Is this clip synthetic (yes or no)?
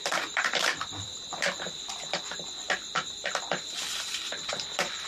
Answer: yes